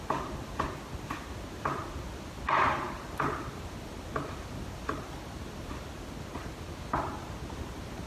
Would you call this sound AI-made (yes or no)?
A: no